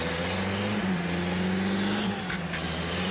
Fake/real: real